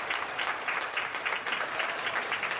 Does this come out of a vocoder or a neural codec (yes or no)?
yes